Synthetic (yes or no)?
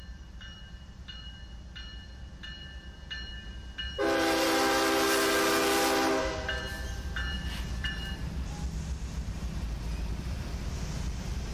no